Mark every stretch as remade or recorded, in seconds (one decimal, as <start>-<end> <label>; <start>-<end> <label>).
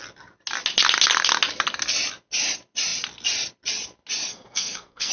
0.0-4.3 recorded; 4.3-5.1 remade